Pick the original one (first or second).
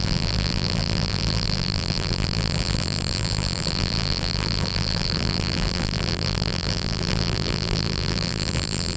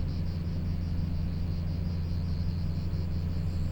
second